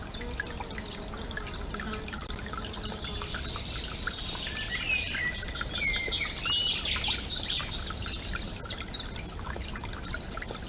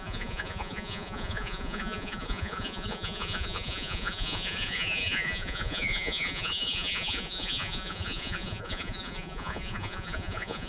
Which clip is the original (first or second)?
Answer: first